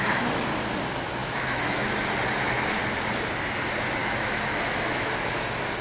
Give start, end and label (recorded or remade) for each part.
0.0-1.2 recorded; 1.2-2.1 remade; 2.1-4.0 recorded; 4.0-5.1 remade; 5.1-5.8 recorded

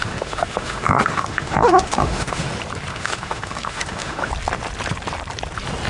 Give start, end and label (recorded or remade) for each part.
0.0-2.5 remade; 2.5-2.9 recorded; 2.9-4.3 remade; 4.3-5.9 recorded

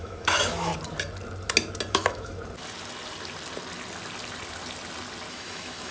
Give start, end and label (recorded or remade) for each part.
0.0-0.7 remade; 0.7-1.9 recorded; 1.9-2.3 remade; 2.3-5.3 recorded; 5.3-5.9 remade

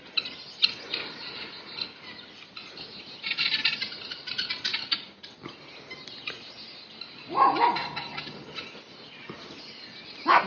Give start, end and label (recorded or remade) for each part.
0.0-10.5 recorded

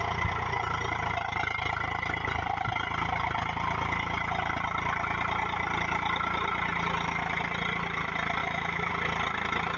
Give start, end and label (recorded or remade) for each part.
0.0-8.4 recorded; 8.4-8.9 remade; 8.9-9.8 recorded

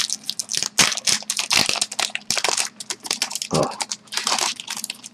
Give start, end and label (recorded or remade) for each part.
0.0-5.1 recorded

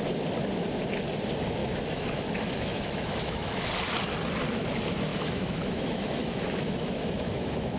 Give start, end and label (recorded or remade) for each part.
0.0-1.6 recorded; 1.6-3.7 remade; 3.7-5.1 recorded; 5.1-7.8 remade

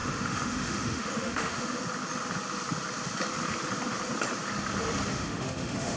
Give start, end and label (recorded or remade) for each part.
0.0-1.8 remade; 1.8-5.1 recorded; 5.1-6.0 remade